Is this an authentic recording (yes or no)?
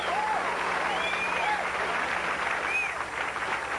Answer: yes